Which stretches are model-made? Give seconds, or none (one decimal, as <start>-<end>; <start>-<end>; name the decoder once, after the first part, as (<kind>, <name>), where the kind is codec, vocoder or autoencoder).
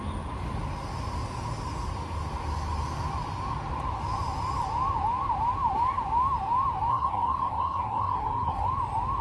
6.9-8.7 (codec, SNAC)